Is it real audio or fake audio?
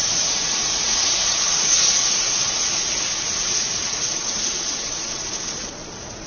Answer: fake